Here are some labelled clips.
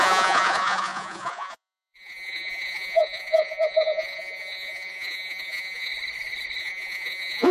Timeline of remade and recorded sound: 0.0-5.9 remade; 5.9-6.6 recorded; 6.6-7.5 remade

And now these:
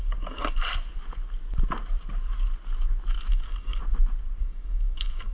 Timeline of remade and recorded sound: 0.0-0.6 remade; 0.6-3.3 recorded; 3.3-3.8 remade; 3.8-4.4 recorded; 4.4-5.3 remade

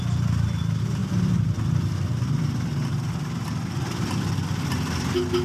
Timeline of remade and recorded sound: 0.0-1.0 recorded; 1.0-4.2 remade; 4.2-5.4 recorded

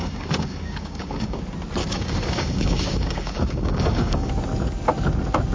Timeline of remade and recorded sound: 0.0-1.4 remade; 1.4-1.8 recorded; 1.8-4.3 remade; 4.3-5.5 recorded

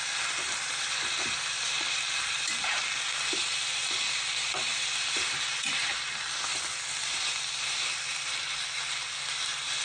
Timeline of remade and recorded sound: 0.0-9.8 recorded

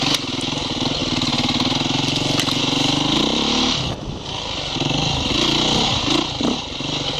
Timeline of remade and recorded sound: 0.0-7.2 recorded

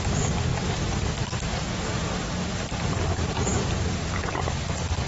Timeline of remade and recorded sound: 0.0-1.9 recorded; 1.9-4.6 remade; 4.6-5.1 recorded

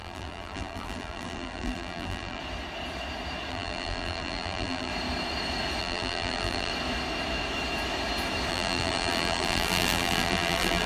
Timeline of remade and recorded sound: 0.0-2.4 remade; 2.4-3.5 recorded; 3.5-4.9 remade; 4.9-5.8 recorded; 5.8-6.7 remade; 6.7-8.5 recorded; 8.5-10.9 remade